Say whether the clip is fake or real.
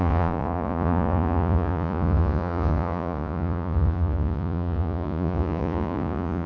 fake